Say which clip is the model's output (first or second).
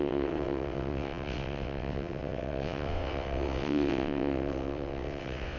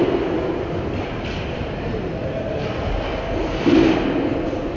first